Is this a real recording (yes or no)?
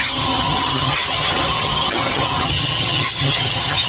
no